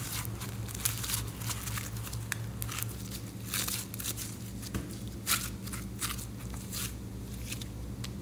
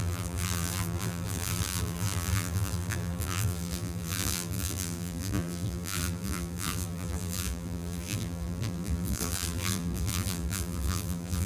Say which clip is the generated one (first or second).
second